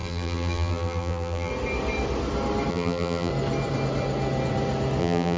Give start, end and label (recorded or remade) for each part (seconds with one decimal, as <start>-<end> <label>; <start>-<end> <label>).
0.0-1.5 remade; 1.5-2.7 recorded; 2.7-3.3 remade; 3.3-5.0 recorded; 5.0-5.4 remade